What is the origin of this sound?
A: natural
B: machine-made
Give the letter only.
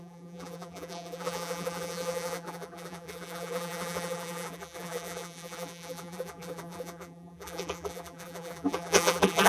B